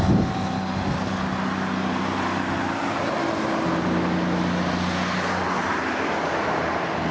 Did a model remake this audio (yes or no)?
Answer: no